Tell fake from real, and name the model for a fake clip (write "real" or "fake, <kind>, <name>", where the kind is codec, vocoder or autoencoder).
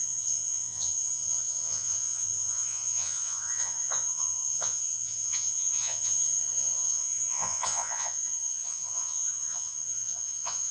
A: fake, vocoder, Vocos